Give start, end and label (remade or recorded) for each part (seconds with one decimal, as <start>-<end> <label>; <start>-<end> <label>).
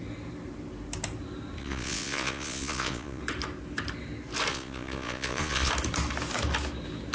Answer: 0.0-1.6 recorded; 1.6-3.2 remade; 3.2-4.5 recorded; 4.5-5.7 remade; 5.7-7.1 recorded